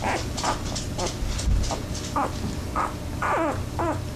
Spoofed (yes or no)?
no